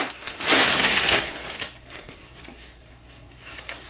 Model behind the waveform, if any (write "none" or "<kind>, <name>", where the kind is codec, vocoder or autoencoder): codec, SNAC